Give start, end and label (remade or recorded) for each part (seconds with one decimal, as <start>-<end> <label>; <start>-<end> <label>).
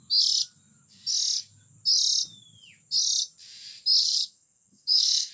0.0-4.0 recorded; 4.0-5.3 remade